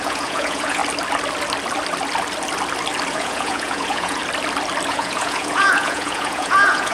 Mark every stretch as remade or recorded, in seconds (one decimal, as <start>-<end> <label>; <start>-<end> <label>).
0.0-0.8 remade; 0.8-3.1 recorded; 3.1-4.2 remade; 4.2-4.9 recorded; 4.9-6.9 remade